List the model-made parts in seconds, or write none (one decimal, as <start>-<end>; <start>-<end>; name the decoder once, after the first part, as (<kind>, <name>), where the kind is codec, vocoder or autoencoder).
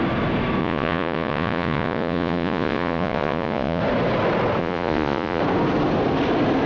0.6-3.8 (vocoder, Vocos); 4.6-5.4